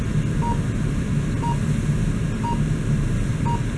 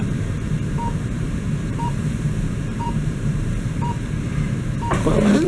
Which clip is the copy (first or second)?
second